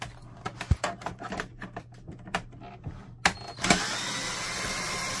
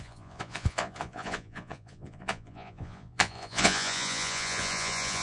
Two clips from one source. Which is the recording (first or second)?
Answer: first